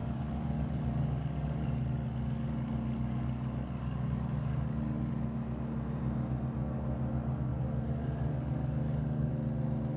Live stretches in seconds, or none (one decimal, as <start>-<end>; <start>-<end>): 5.1-7.5; 9.3-10.0